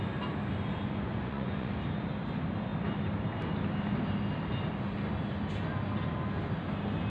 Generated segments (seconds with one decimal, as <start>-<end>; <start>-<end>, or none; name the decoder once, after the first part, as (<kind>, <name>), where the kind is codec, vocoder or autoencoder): 0.7-1.7 (vocoder, Vocos)

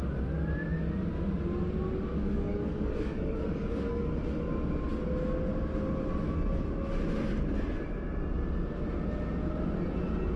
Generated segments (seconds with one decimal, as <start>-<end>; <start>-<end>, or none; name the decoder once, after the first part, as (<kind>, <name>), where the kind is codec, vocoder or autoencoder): 2.1-4.1 (codec, DAC)

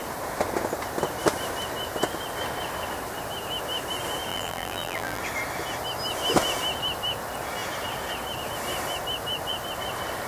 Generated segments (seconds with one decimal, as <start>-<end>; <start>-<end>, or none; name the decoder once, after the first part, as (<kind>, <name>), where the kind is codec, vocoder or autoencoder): 4.3-5.2 (vocoder, BigVGAN v2)

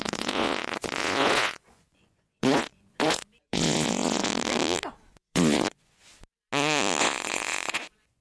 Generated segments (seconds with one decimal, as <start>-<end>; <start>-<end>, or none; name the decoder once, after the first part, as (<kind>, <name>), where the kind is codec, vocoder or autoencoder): 0.0-4.3 (vocoder, Vocos); 5.1-6.1; 7.0-8.2

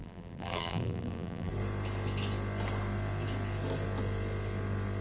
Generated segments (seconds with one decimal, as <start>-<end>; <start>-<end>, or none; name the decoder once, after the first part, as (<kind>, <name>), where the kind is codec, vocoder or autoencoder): 0.0-1.5 (vocoder, BigVGAN v2)

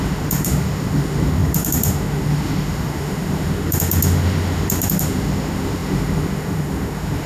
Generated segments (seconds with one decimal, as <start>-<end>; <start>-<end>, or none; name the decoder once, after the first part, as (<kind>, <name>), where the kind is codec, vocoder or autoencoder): 0.0-7.3 (autoencoder, DAC-VAE)

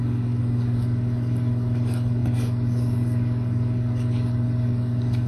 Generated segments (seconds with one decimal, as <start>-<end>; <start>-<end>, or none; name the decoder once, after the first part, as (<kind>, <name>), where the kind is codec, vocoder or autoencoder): 0.0-5.3 (codec, DAC)

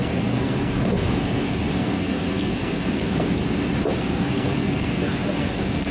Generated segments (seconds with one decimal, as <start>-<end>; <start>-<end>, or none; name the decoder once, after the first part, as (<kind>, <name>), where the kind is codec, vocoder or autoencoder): 0.0-3.4 (codec, SNAC); 4.0-5.9